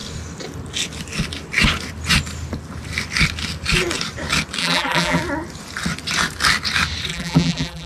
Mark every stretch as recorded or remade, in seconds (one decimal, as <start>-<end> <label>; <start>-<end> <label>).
0.0-4.6 recorded; 4.6-5.2 remade; 5.2-7.1 recorded; 7.1-7.9 remade